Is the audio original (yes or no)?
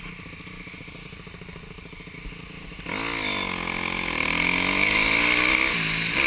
yes